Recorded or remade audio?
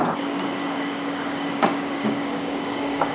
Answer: remade